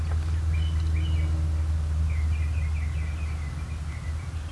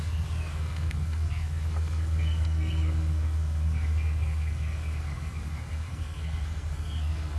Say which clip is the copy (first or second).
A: second